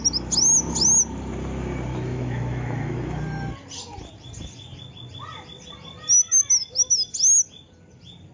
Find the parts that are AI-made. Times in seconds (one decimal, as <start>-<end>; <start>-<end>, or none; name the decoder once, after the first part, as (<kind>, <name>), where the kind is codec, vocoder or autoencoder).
1.9-3.2 (autoencoder, DAC-VAE)